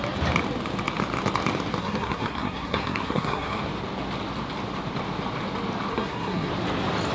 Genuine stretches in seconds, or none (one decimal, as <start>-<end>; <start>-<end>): 0.0-1.8; 3.6-5.9; 6.5-7.1

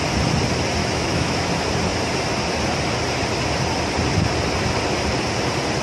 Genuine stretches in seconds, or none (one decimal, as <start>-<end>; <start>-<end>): 0.0-0.8; 1.5-5.8

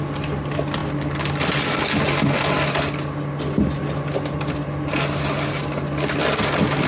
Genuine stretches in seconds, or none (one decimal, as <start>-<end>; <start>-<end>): 0.0-6.9

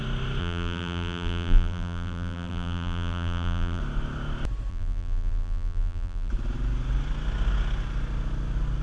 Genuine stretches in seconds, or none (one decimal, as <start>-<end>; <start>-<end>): 0.0-0.4; 3.8-4.7; 6.3-8.8

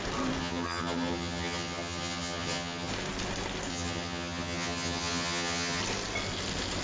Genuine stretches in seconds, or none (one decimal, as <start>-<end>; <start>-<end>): 0.0-0.4; 2.9-3.7; 5.8-6.8

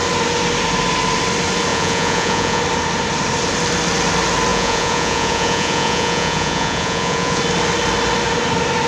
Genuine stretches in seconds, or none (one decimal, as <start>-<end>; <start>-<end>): 0.0-1.7; 2.6-4.5; 7.4-8.9

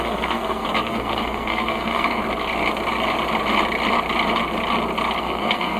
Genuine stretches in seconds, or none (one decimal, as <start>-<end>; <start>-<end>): 2.2-5.2